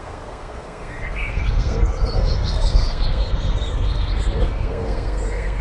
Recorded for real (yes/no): no